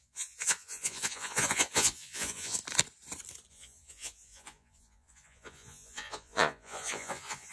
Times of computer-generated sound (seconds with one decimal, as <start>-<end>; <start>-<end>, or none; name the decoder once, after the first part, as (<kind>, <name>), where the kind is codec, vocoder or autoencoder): 0.0-2.6 (vocoder, Vocos); 3.5-7.5